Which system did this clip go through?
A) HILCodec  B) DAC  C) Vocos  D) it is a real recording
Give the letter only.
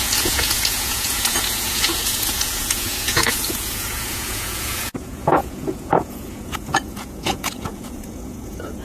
C